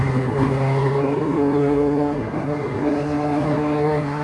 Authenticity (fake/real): fake